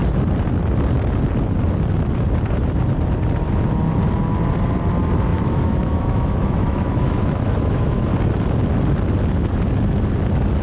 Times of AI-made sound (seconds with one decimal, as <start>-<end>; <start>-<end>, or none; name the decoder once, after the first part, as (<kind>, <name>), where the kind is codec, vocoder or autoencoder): 5.3-8.1 (autoencoder, DAC-VAE)